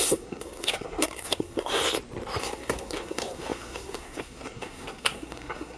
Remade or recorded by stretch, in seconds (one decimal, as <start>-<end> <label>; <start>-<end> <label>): 0.0-1.8 remade; 1.8-2.4 recorded; 2.4-5.8 remade